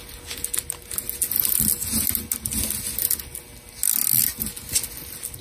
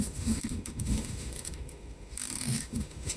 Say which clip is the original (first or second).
first